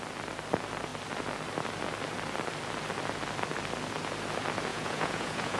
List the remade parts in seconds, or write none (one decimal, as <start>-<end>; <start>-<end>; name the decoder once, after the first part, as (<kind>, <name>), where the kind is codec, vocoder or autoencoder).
4.7-5.6 (vocoder, Vocos)